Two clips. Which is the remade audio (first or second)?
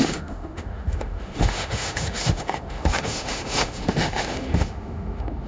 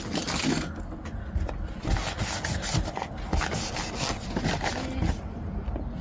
first